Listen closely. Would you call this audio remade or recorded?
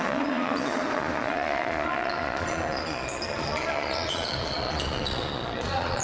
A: remade